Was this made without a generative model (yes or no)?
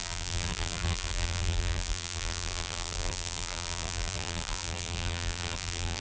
no